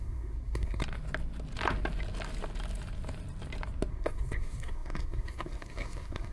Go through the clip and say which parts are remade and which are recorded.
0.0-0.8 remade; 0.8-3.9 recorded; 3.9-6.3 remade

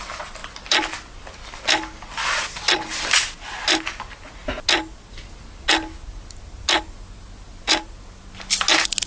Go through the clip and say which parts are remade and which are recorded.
0.0-9.1 recorded

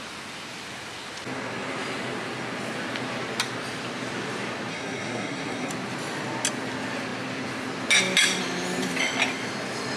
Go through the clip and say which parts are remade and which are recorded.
0.0-4.7 recorded; 4.7-5.7 remade; 5.7-10.0 recorded

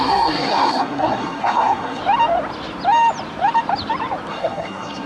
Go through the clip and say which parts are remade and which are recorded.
0.0-2.0 remade; 2.0-4.3 recorded; 4.3-5.1 remade

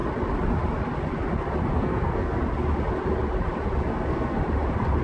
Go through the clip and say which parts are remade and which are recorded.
0.0-1.7 recorded; 1.7-2.4 remade; 2.4-3.9 recorded; 3.9-4.4 remade; 4.4-5.0 recorded

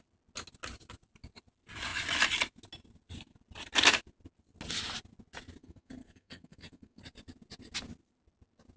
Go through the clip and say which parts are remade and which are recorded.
0.0-5.6 recorded; 5.6-7.0 remade; 7.0-8.8 recorded

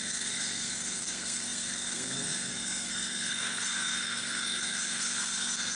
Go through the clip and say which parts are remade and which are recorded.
0.0-5.8 remade

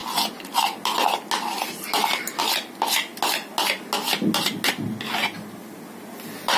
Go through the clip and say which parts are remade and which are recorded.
0.0-6.6 recorded